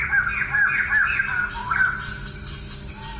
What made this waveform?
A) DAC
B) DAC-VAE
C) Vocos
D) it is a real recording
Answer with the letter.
D